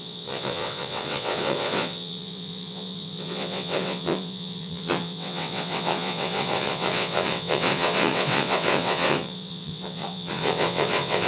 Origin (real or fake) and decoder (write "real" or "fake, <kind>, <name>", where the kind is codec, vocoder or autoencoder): fake, vocoder, WaveNeXt